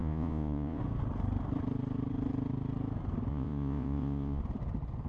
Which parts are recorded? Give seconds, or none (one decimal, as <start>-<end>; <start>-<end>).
0.8-3.3; 4.4-5.1